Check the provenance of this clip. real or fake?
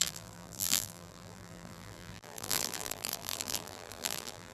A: fake